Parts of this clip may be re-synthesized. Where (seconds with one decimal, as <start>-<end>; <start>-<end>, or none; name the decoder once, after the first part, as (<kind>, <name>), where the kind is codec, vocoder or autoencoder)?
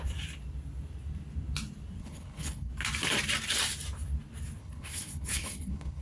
2.0-2.7 (codec, HILCodec); 4.6-6.0